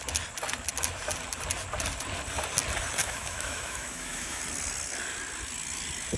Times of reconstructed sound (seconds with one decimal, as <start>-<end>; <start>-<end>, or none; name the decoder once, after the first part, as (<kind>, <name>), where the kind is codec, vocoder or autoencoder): 3.0-4.4 (autoencoder, DAC-VAE)